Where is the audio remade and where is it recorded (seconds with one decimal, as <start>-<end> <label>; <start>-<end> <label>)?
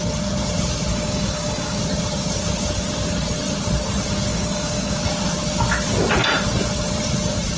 0.0-0.9 recorded; 0.9-1.8 remade; 1.8-4.3 recorded; 4.3-5.0 remade; 5.0-7.6 recorded